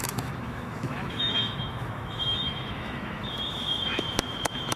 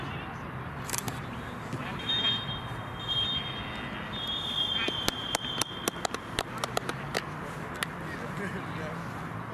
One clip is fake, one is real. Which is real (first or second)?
second